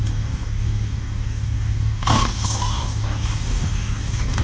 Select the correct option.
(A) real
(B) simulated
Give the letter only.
B